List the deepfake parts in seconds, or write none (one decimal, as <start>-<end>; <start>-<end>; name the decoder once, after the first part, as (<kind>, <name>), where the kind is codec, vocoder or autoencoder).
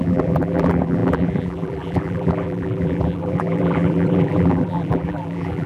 0.0-5.7 (vocoder, BigVGAN v2)